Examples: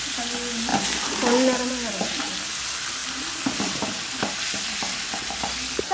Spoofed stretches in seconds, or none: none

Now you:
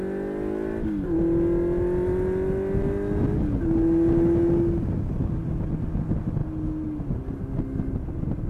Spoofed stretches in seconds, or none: none

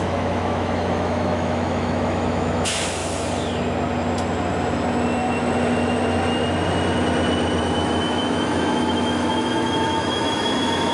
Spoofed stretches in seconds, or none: 0.0-3.0 (autoencoder, DAC-VAE); 7.6-10.9

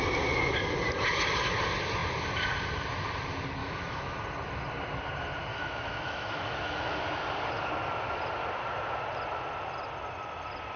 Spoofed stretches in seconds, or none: 3.6-4.2 (autoencoder, DAC-VAE); 5.5-7.0

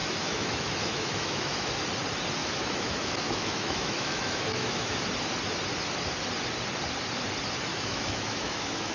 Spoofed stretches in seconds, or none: 0.0-1.7 (autoencoder, DAC-VAE); 2.4-5.0; 7.7-8.9

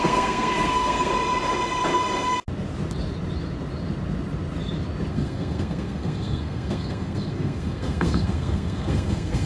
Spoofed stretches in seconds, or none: 0.0-1.1 (codec, SNAC); 5.1-9.5

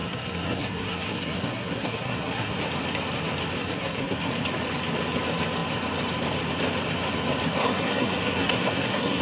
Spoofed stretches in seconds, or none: 0.0-2.6 (codec, SNAC); 3.6-4.3; 7.6-9.2

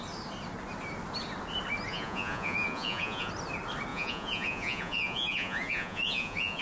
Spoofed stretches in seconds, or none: 1.9-3.3 (vocoder, Vocos); 3.9-6.6